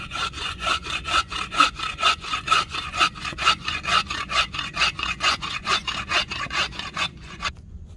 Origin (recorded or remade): remade